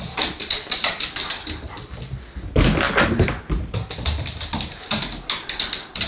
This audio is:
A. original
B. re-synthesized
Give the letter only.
A